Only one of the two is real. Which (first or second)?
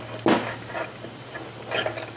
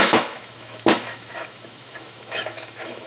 first